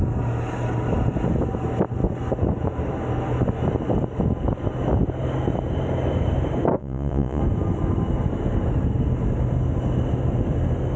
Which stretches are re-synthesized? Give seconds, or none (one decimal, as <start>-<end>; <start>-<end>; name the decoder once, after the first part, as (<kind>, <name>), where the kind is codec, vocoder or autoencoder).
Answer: 6.8-7.4 (vocoder, Vocos)

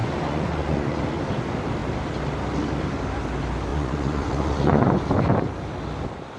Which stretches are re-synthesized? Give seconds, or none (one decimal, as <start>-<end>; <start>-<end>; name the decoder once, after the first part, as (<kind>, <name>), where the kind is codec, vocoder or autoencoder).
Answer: 0.0-1.0 (vocoder, Vocos); 3.7-5.1

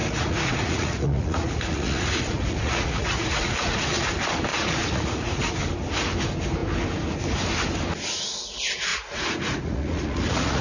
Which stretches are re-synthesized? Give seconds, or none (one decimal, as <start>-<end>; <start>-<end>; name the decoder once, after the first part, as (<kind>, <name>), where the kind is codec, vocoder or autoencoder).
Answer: 0.0-4.1 (vocoder, Vocos); 4.5-5.4; 8.9-10.6

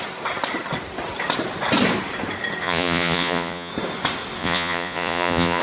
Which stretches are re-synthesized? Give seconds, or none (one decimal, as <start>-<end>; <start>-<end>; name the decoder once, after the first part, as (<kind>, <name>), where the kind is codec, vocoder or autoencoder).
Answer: 2.6-3.7 (vocoder, Vocos); 4.4-5.6

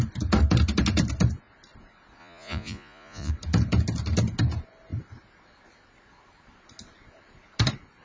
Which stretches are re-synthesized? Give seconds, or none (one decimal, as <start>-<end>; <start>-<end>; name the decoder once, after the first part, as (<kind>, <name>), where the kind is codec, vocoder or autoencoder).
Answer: 2.2-3.3 (vocoder, Vocos)

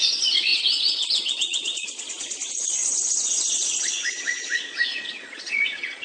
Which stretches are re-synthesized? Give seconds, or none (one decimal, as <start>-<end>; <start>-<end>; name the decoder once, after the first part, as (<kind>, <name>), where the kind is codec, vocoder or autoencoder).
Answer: 0.0-6.0 (vocoder, Vocos)

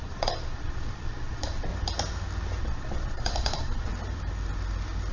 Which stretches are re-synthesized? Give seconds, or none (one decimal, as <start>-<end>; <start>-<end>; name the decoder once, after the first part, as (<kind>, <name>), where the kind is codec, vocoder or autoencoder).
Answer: 0.0-1.7 (vocoder, Vocos); 2.6-3.9

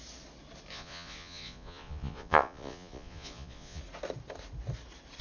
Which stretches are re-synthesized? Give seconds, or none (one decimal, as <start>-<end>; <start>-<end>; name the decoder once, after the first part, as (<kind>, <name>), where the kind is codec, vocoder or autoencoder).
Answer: 0.7-3.8 (vocoder, Vocos)